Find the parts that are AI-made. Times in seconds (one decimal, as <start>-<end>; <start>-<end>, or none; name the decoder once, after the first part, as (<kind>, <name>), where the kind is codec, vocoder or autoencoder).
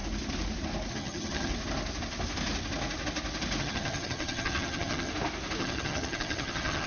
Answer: 0.9-1.5 (vocoder, HiFi-GAN); 3.6-5.1; 5.6-6.9